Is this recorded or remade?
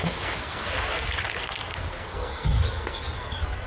remade